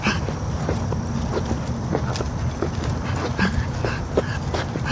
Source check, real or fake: real